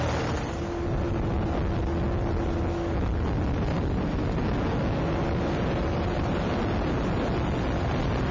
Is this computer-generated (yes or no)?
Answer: no